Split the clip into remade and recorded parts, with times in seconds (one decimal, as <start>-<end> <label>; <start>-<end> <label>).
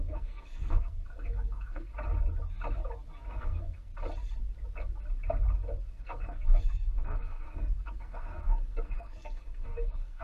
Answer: 0.0-1.9 remade; 1.9-3.3 recorded; 3.3-3.9 remade; 3.9-5.9 recorded; 5.9-10.2 remade